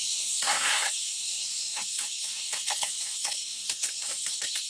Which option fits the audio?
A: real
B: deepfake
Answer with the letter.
B